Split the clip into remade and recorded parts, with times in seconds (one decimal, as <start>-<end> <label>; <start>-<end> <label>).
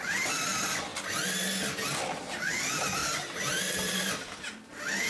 0.0-5.1 recorded